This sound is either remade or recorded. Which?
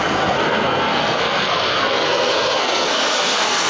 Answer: remade